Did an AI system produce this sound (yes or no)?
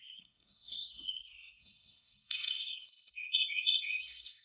yes